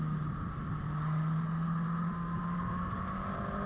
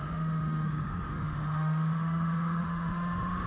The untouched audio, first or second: first